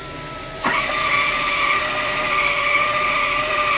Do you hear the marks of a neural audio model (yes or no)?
yes